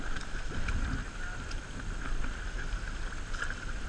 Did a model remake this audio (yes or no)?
no